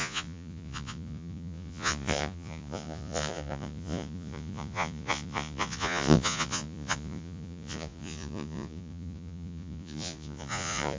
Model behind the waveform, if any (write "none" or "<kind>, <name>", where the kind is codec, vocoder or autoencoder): vocoder, Vocos